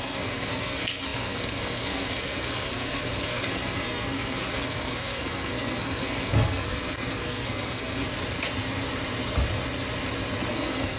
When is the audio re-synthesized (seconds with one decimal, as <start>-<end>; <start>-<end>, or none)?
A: 0.0-8.1; 10.5-11.0